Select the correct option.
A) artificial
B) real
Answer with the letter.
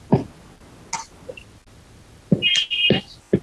B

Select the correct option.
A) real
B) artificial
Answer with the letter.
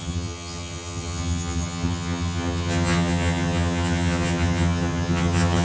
B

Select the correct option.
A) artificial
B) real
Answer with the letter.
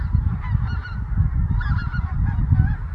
B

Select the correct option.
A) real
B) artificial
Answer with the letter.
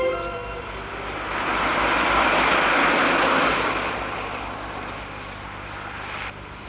A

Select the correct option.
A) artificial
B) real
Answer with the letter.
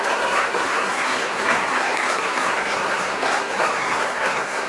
A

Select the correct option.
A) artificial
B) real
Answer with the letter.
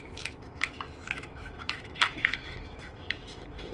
A